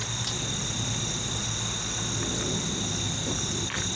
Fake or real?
real